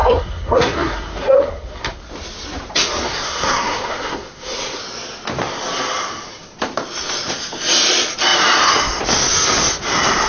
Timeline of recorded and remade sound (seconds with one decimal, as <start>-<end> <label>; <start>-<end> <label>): 0.0-2.0 remade; 2.0-3.1 recorded; 3.1-4.8 remade; 4.8-10.3 recorded